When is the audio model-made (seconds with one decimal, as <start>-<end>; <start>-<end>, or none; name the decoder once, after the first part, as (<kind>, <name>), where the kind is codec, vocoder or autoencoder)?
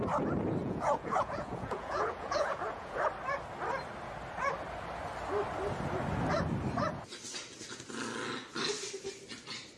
0.6-3.0 (vocoder, Vocos)